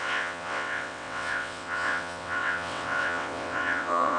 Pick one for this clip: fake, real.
fake